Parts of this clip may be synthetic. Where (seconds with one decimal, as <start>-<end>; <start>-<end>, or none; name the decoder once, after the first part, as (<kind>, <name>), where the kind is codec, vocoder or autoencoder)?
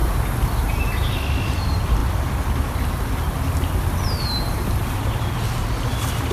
none